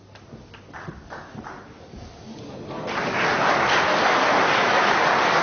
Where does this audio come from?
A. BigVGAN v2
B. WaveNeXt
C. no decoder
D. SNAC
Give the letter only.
C